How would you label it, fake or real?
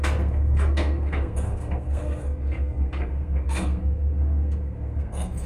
fake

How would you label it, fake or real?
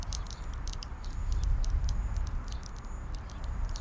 real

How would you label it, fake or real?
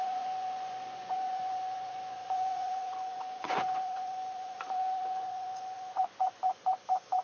fake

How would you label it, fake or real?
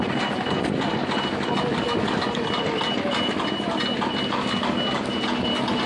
real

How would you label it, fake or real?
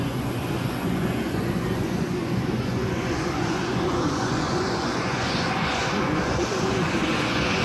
fake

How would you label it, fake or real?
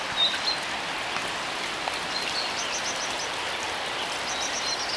real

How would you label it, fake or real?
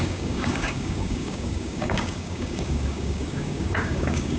fake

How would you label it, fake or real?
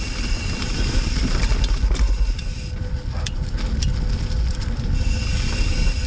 real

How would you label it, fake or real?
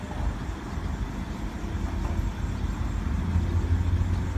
real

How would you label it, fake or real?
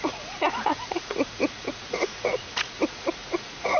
fake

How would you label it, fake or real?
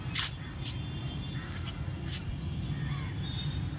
real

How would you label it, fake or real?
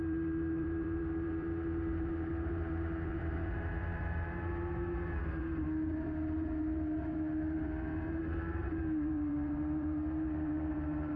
fake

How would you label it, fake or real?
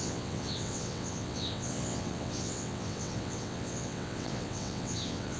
fake